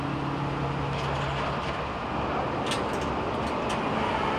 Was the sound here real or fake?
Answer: real